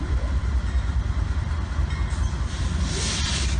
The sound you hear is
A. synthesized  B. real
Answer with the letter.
A